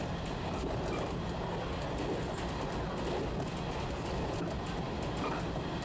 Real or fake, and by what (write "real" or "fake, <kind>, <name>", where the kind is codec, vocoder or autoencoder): real